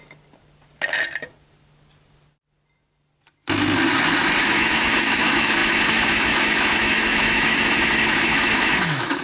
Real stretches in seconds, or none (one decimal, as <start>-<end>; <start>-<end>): 0.0-4.4